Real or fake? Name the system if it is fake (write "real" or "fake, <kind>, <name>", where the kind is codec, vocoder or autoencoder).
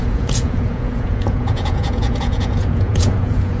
fake, vocoder, Vocos